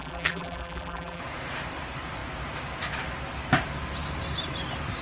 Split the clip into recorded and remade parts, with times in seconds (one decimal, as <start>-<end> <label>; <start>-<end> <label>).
0.0-1.2 remade; 1.2-5.0 recorded